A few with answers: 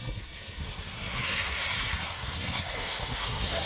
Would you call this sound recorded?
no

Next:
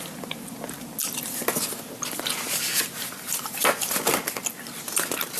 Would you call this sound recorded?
yes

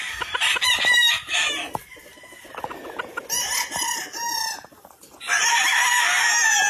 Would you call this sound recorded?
yes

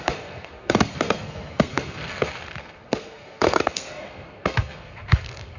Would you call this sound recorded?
no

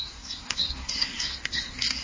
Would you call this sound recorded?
no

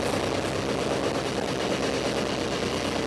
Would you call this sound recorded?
yes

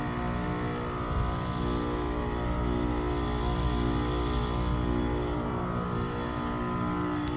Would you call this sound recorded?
yes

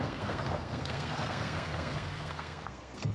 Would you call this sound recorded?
no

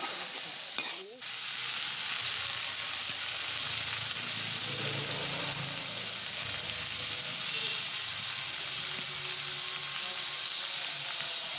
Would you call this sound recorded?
yes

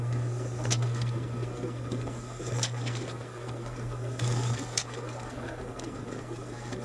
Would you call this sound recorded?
no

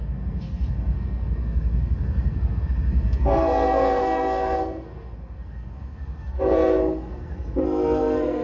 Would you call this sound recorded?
no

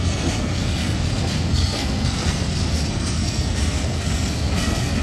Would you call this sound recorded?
no